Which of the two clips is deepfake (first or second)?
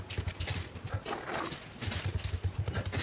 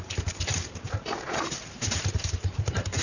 second